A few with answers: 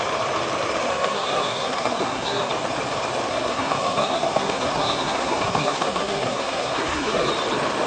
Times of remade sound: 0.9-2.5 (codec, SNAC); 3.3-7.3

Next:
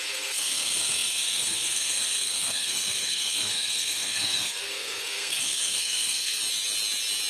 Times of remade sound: 0.0-6.4 (codec, SNAC)

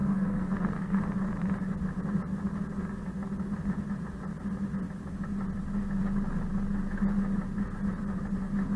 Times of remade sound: 0.0-1.0 (codec, SNAC)

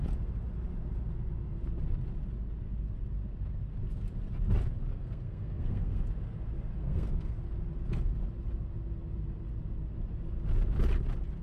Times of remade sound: 4.9-6.0 (codec, SNAC); 6.8-7.4

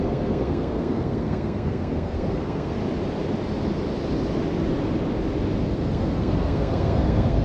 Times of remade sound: 0.0-2.8 (codec, SNAC); 5.7-7.4

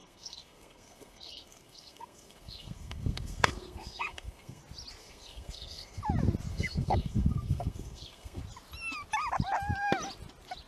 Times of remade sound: 0.0-4.6 (codec, SNAC); 5.0-6.0; 6.5-8.4